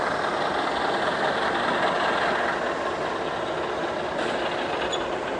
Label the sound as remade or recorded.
recorded